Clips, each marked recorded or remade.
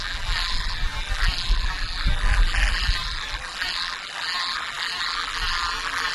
remade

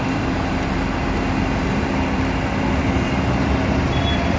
recorded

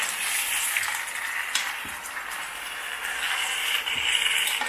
remade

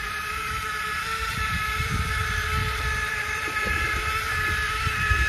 remade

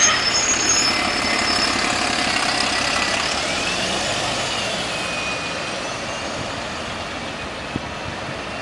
recorded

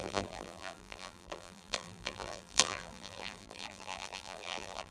remade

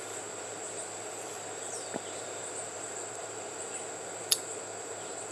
remade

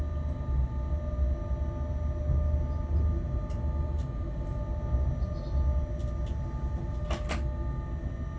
recorded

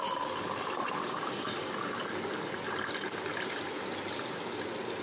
recorded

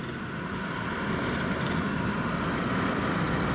remade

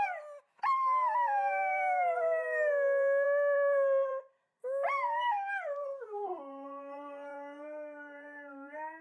remade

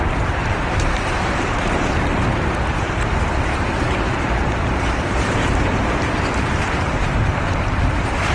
remade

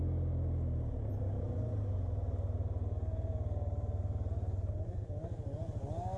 recorded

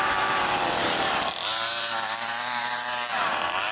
remade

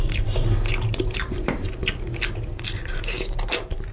remade